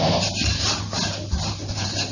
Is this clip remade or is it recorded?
recorded